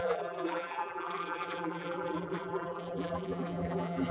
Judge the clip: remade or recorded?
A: remade